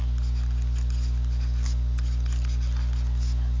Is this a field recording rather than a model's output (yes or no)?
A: yes